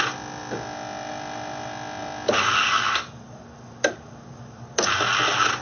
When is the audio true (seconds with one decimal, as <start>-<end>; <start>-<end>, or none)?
0.0-5.6